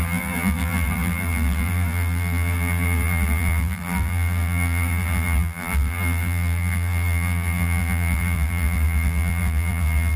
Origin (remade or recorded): remade